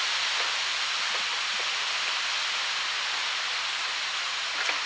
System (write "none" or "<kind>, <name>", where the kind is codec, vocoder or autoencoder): none